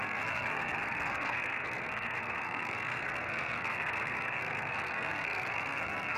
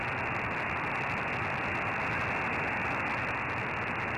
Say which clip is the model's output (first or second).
first